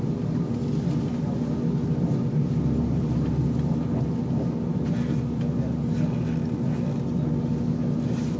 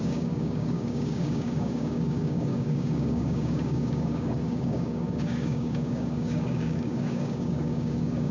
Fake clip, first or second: second